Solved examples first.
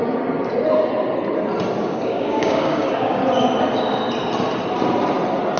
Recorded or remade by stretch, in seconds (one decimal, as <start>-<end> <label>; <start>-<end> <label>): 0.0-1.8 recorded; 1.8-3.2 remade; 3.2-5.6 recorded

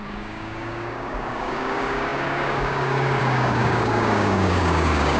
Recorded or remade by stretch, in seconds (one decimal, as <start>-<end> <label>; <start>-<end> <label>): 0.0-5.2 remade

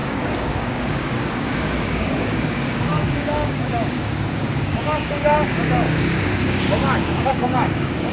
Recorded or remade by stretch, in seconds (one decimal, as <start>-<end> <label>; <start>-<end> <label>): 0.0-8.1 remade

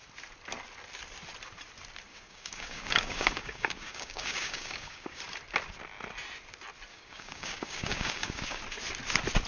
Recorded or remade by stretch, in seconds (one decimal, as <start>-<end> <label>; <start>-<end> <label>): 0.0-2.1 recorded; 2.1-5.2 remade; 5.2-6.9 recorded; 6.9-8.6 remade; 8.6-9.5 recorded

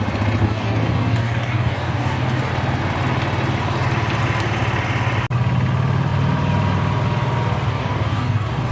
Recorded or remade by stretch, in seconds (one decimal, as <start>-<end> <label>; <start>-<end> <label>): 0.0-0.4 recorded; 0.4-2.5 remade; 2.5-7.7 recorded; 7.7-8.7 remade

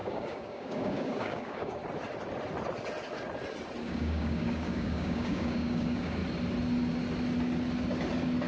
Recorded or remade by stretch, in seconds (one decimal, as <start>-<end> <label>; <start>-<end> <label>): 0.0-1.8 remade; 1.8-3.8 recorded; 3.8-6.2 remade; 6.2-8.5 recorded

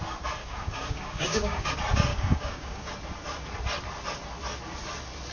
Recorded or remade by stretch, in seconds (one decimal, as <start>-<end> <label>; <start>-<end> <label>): 0.0-0.4 recorded; 0.4-1.7 remade; 1.7-2.1 recorded; 2.1-2.9 remade; 2.9-5.3 recorded